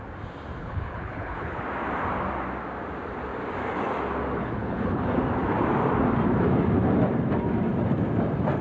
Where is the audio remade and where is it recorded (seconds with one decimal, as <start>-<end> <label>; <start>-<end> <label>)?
0.0-0.6 recorded; 0.6-1.6 remade; 1.6-4.4 recorded; 4.4-5.0 remade; 5.0-8.6 recorded